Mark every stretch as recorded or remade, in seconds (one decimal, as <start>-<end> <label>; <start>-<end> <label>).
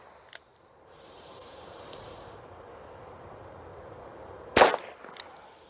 0.0-0.5 recorded; 0.5-2.4 remade; 2.4-3.7 recorded; 3.7-4.3 remade; 4.3-5.7 recorded